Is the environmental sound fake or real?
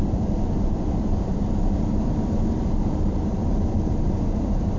fake